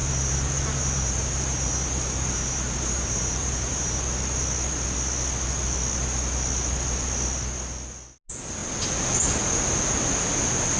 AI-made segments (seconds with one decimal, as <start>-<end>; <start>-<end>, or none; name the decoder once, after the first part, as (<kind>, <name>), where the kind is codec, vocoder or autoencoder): 0.0-4.0 (vocoder, BigVGAN v2)